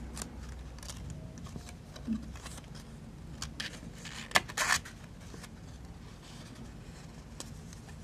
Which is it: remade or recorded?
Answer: recorded